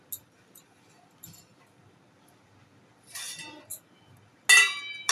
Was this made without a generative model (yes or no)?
yes